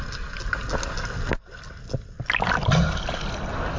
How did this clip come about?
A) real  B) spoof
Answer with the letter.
A